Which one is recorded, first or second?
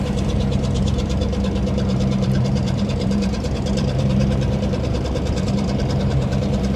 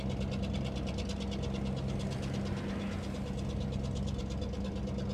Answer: second